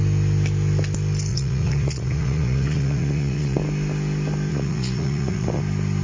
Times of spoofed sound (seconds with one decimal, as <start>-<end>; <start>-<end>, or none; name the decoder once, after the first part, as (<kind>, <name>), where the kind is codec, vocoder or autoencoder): 1.3-3.6 (vocoder, Vocos); 4.5-5.6